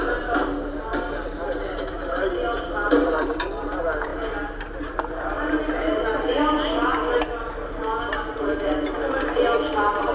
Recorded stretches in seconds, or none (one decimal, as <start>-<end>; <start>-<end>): 0.0-10.1